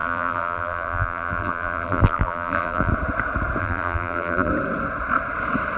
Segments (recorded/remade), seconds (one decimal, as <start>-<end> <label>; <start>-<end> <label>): 0.0-2.9 remade; 2.9-3.6 recorded; 3.6-4.5 remade; 4.5-5.8 recorded